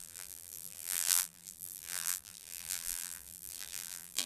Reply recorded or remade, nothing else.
remade